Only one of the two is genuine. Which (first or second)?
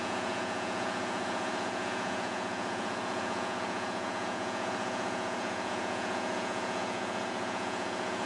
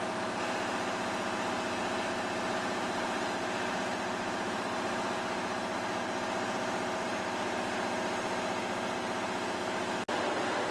second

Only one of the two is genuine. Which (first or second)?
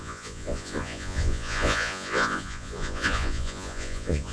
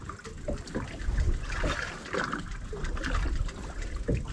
second